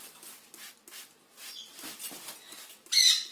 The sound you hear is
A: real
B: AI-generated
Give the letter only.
A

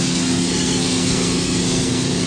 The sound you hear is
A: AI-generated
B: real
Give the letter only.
A